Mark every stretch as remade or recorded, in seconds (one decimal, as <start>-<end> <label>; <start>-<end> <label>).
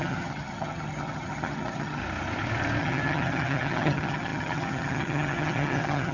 0.0-2.0 remade; 2.0-2.8 recorded; 2.8-6.1 remade